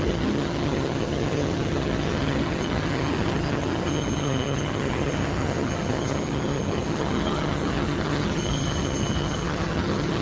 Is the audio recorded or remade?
remade